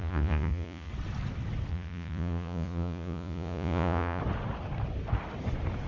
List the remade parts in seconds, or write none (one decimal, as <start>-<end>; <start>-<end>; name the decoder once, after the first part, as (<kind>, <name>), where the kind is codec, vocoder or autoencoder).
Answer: 0.0-0.9 (vocoder, Vocos); 1.7-4.2